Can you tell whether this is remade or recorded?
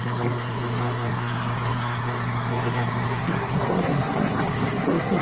remade